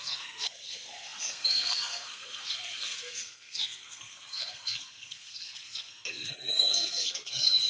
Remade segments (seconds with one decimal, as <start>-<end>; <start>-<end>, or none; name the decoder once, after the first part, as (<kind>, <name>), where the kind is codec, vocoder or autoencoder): 0.0-7.7 (codec, SNAC)